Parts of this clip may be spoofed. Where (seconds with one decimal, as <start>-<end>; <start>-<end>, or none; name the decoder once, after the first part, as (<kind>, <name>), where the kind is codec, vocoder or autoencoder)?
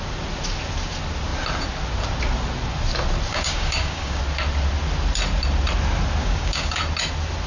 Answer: 3.3-4.2 (codec, DAC); 6.2-6.8